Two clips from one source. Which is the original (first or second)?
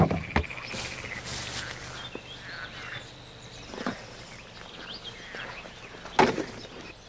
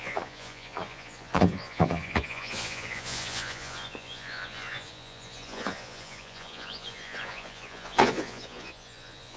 first